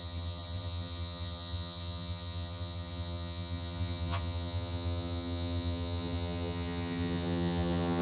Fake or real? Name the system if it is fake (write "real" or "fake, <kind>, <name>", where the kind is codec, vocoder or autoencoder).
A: fake, vocoder, HiFi-GAN